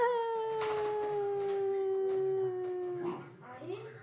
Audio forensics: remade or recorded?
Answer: recorded